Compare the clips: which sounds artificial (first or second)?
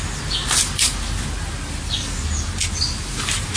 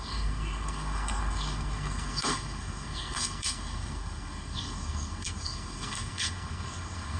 second